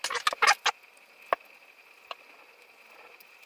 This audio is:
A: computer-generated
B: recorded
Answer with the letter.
B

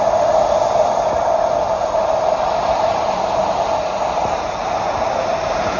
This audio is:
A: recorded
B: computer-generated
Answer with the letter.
A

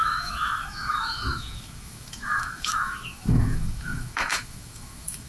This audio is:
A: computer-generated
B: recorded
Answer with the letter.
A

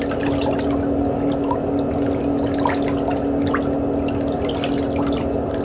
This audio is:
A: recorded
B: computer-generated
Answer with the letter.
A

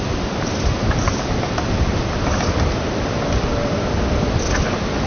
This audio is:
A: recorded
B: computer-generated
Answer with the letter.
A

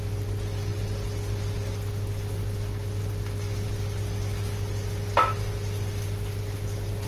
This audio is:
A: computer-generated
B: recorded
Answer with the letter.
B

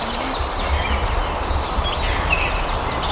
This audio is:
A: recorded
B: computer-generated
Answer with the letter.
A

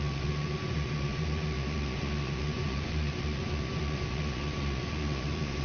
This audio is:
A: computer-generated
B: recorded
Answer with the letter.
A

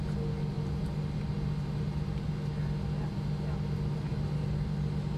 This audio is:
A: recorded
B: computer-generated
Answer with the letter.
A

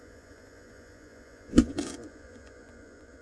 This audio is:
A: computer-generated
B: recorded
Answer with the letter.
A